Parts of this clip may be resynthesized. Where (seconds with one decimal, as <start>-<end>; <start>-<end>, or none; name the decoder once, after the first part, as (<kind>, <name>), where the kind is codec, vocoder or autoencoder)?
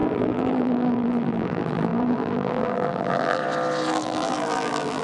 0.0-3.4 (vocoder, BigVGAN v2); 3.9-5.0